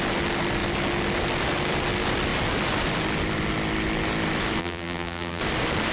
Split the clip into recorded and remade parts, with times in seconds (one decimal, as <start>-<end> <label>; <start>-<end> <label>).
0.0-4.6 recorded; 4.6-5.4 remade; 5.4-5.9 recorded